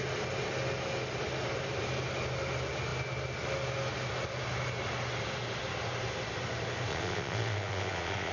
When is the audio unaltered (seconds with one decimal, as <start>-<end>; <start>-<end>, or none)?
0.0-6.9